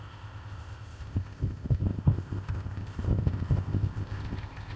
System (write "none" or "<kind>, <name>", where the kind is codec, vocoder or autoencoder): codec, ZipCodec